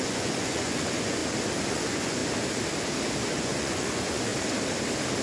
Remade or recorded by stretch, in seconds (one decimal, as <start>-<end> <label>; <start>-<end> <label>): 0.0-1.2 remade; 1.2-1.7 recorded; 1.7-2.2 remade; 2.2-3.3 recorded; 3.3-4.3 remade; 4.3-5.2 recorded